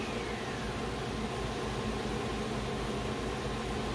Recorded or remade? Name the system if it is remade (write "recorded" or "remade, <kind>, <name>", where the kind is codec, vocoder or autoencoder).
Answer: recorded